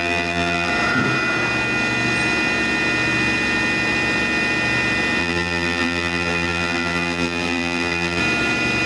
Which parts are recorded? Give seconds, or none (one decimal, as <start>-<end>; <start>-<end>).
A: 0.7-5.2; 8.2-8.9